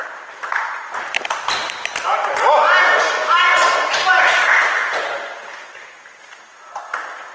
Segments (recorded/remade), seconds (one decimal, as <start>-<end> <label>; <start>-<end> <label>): 0.0-7.3 recorded